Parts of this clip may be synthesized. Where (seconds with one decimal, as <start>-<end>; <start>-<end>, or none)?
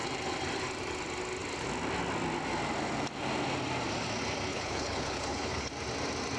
4.5-5.7